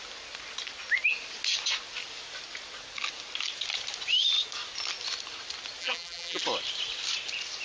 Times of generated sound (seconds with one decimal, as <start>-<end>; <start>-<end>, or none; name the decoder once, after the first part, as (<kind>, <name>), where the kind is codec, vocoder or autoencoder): 5.8-6.4 (vocoder, BigVGAN v2)